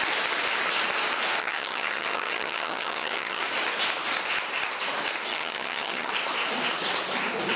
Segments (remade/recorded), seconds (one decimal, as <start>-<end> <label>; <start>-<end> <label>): 0.0-1.4 recorded; 1.4-3.4 remade; 3.4-5.3 recorded; 5.3-6.1 remade; 6.1-7.6 recorded